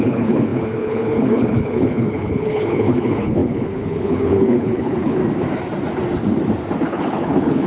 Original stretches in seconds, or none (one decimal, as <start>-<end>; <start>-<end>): 5.2-6.9

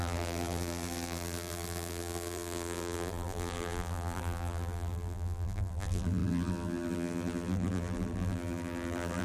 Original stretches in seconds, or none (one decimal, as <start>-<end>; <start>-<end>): none

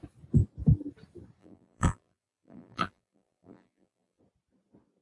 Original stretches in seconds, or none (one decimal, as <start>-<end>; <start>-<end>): 0.0-1.4; 4.2-5.0